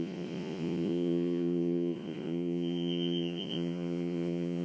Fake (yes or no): yes